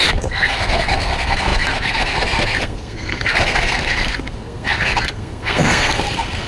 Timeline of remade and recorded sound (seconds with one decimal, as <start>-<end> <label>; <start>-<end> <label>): 0.0-6.5 remade